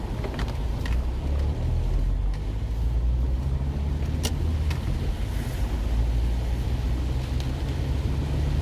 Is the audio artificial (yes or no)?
no